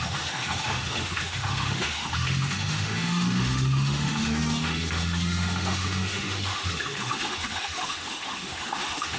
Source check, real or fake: fake